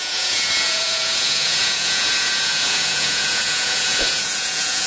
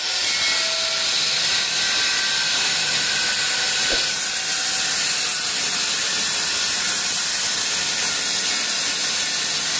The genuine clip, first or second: second